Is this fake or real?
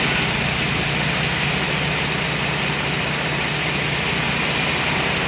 real